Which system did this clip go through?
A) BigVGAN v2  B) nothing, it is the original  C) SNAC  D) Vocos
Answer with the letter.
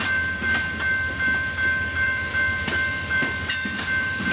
A